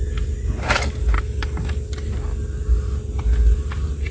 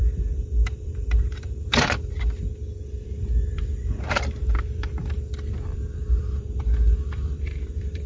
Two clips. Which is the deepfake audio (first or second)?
second